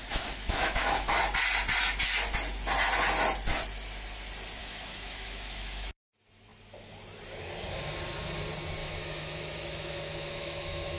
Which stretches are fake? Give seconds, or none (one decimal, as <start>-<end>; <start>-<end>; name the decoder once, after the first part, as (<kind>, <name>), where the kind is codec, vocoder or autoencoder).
0.0-1.2 (autoencoder, DAC-VAE); 4.6-6.0; 8.8-11.0